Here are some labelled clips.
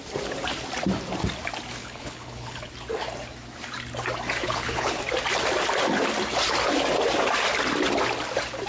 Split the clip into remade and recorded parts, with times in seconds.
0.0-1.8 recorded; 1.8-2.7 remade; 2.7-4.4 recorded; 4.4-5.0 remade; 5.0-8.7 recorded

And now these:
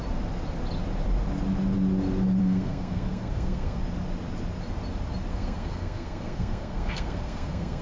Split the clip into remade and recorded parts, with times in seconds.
0.0-2.4 recorded; 2.4-3.8 remade; 3.8-5.3 recorded; 5.3-7.8 remade

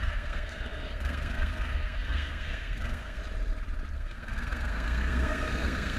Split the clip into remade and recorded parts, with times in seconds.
0.0-3.2 remade; 3.2-3.9 recorded; 3.9-6.0 remade

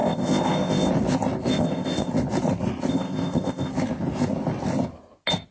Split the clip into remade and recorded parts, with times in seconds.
0.0-0.9 remade; 0.9-1.5 recorded; 1.5-2.1 remade; 2.1-2.9 recorded; 2.9-3.7 remade; 3.7-5.5 recorded

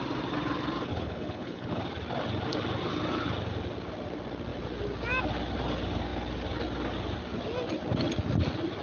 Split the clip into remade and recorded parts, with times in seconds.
0.0-0.9 recorded; 0.9-1.8 remade; 1.8-8.8 recorded